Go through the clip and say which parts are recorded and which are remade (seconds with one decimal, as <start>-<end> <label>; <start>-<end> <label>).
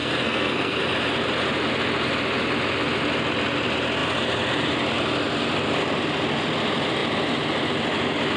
0.0-0.8 remade; 0.8-8.4 recorded